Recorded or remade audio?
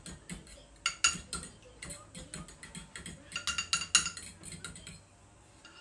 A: recorded